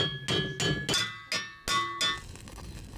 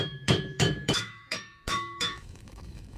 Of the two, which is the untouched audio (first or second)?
first